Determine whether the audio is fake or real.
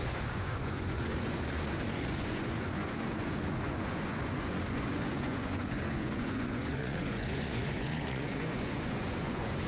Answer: fake